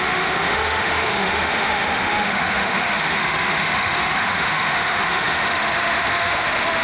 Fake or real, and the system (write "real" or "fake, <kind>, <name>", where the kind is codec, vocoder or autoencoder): fake, autoencoder, DAC-VAE